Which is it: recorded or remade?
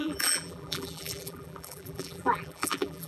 remade